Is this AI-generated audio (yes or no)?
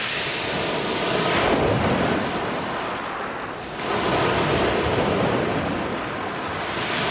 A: no